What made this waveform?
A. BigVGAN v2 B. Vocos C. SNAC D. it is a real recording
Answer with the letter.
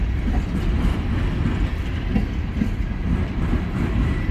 A